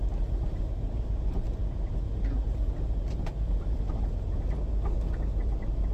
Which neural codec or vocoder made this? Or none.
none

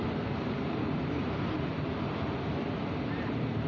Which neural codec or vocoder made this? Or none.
vocoder, BigVGAN v2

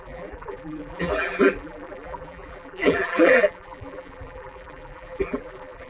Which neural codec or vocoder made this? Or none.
vocoder, BigVGAN v2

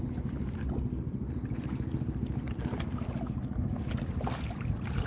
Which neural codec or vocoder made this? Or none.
none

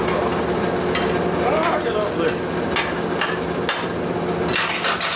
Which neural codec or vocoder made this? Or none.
none